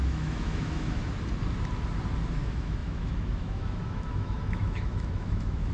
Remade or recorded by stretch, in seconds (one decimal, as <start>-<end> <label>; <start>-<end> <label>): 0.0-1.0 remade; 1.0-2.4 recorded; 2.4-5.7 remade

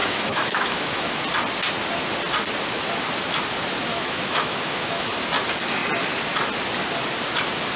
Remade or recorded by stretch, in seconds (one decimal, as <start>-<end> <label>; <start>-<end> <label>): 0.0-1.2 remade; 1.2-3.9 recorded; 3.9-5.2 remade; 5.2-7.8 recorded